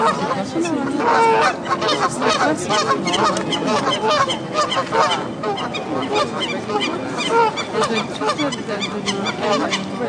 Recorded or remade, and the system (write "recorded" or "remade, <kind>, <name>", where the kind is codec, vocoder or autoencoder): recorded